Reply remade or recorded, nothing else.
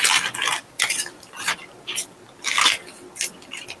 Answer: recorded